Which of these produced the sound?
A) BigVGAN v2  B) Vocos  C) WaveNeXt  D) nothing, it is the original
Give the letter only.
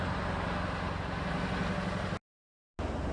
D